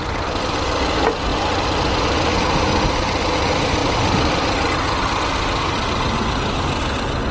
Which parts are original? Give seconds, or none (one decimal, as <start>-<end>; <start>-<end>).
0.0-7.3